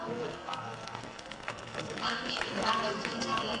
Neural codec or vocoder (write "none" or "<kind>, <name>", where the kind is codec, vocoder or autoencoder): codec, SNAC